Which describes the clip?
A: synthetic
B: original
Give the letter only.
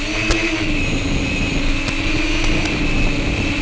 B